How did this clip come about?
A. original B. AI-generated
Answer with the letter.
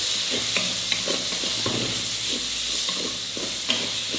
A